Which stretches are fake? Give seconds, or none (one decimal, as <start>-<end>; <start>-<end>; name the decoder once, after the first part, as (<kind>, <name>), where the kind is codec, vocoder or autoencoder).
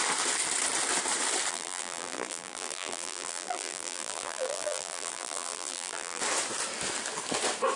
1.5-6.2 (vocoder, BigVGAN v2)